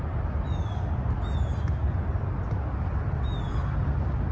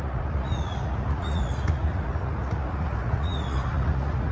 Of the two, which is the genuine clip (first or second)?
first